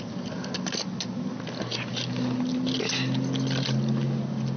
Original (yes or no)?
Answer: yes